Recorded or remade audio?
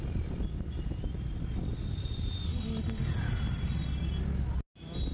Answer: recorded